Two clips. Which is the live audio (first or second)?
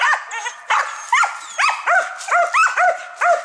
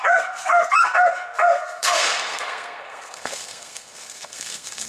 first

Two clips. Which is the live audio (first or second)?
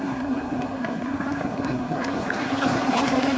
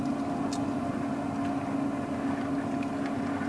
second